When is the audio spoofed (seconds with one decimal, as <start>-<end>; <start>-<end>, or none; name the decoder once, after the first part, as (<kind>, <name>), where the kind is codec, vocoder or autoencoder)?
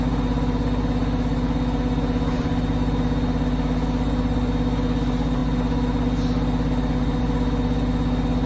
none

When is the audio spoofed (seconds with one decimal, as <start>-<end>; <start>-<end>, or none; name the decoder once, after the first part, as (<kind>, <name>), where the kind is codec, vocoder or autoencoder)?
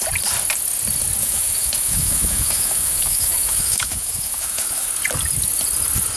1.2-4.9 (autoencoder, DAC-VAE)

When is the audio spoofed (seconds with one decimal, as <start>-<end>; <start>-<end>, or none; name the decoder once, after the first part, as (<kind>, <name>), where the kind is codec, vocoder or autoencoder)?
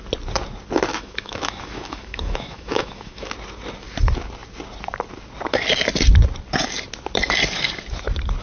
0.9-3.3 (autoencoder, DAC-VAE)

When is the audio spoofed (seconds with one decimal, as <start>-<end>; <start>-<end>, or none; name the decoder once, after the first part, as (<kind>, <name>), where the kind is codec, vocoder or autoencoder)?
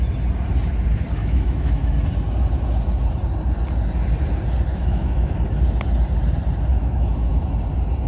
1.2-1.9 (autoencoder, DAC-VAE); 4.7-5.3; 6.7-7.4